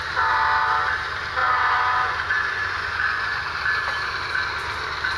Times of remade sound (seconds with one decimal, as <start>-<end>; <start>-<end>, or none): 1.4-3.4